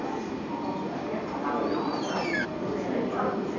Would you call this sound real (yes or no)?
no